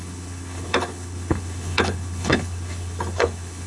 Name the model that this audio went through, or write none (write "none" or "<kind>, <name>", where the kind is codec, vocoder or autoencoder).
codec, HILCodec